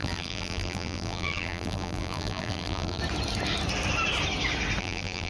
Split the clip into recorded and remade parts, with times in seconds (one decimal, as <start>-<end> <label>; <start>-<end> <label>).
0.0-3.0 remade; 3.0-4.8 recorded; 4.8-5.3 remade